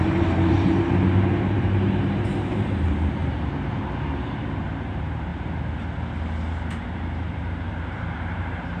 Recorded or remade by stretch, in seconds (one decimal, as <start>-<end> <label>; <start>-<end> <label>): 0.0-5.3 remade; 5.3-6.8 recorded; 6.8-8.8 remade